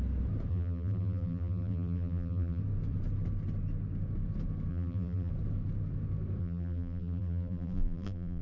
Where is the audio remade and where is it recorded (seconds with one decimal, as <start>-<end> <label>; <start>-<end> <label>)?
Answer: 0.0-0.5 recorded; 0.5-2.6 remade; 2.6-4.7 recorded; 4.7-5.3 remade; 5.3-6.4 recorded; 6.4-8.4 remade